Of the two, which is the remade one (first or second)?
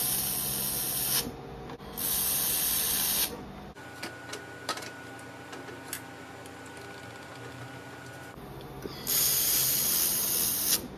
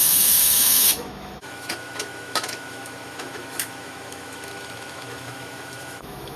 second